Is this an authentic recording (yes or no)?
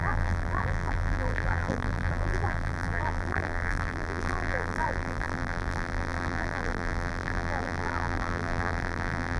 no